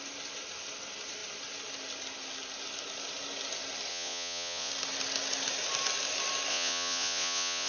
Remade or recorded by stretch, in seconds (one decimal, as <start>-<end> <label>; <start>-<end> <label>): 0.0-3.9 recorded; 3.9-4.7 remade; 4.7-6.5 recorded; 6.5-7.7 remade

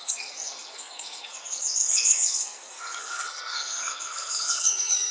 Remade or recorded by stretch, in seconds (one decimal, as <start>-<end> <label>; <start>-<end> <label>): 0.0-5.1 remade

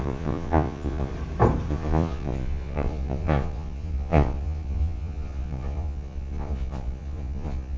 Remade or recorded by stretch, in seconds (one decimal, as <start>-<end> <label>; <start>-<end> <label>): 0.0-1.1 remade; 1.1-1.7 recorded; 1.7-7.8 remade

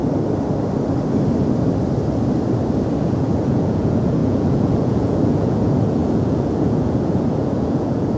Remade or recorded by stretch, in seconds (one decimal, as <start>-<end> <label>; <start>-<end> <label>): 0.0-3.0 recorded; 3.0-8.2 remade

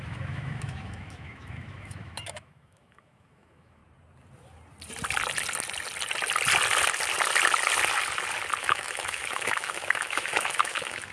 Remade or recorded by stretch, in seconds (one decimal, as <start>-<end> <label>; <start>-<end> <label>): 0.0-3.8 remade; 3.8-8.6 recorded; 8.6-11.1 remade